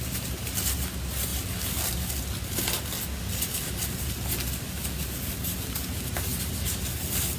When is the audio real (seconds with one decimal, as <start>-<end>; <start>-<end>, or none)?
0.0-7.4